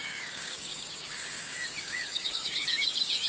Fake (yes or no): yes